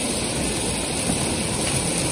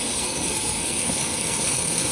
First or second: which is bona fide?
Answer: first